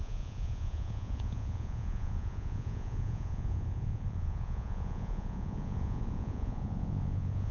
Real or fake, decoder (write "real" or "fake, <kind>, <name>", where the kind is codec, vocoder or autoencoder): fake, vocoder, Vocos